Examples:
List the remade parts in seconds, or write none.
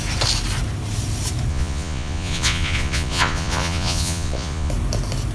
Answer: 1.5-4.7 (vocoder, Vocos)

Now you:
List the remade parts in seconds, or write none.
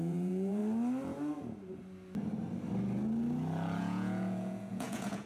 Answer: 0.0-0.6 (vocoder, Vocos); 3.8-5.3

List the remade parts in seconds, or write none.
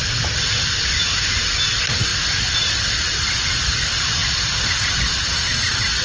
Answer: none